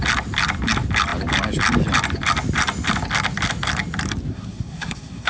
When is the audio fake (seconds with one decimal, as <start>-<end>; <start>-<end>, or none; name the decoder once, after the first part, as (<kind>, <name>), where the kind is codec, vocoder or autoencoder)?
4.3-5.3 (codec, SNAC)